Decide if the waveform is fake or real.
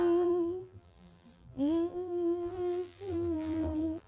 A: fake